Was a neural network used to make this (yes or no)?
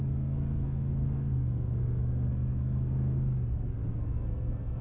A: yes